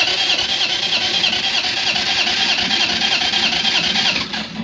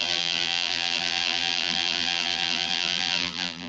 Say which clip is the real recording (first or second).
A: first